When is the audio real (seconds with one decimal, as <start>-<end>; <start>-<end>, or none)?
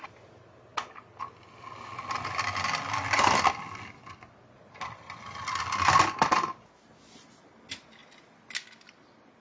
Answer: 0.0-9.4